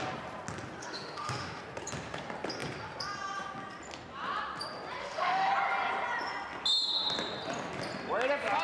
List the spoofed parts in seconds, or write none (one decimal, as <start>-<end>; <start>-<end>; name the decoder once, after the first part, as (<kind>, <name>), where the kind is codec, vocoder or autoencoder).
0.8-1.6 (autoencoder, DAC-VAE); 5.0-5.5